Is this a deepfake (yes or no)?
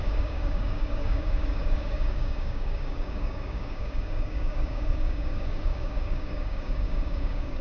yes